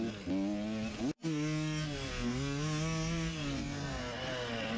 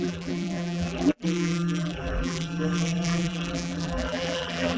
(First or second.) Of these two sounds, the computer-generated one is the second